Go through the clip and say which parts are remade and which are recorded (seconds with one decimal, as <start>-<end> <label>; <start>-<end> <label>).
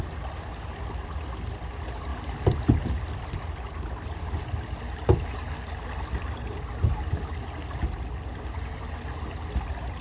0.0-10.0 recorded